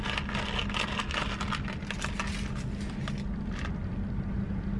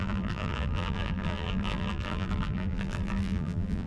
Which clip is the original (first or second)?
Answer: first